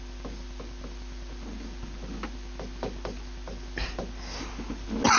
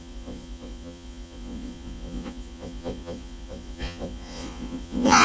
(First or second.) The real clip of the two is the first